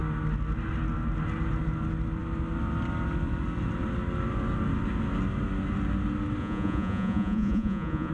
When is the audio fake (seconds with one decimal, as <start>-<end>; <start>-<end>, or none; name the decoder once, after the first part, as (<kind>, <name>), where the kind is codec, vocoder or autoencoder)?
6.4-8.1 (vocoder, Vocos)